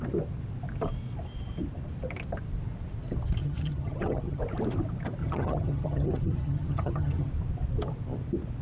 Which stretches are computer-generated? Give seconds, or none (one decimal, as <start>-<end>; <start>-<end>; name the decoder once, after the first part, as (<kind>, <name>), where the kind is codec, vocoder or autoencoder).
3.4-4.4 (vocoder, HiFi-GAN); 5.2-7.3